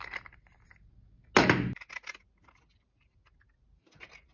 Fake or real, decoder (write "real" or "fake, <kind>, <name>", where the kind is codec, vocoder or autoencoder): real